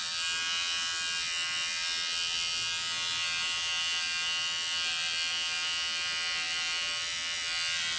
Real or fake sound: real